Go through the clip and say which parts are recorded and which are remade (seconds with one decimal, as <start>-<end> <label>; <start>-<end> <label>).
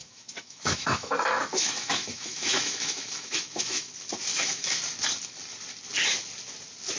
0.0-3.9 remade; 3.9-4.3 recorded; 4.3-4.8 remade; 4.8-7.0 recorded